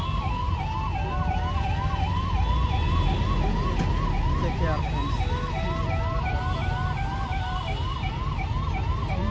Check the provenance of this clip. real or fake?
real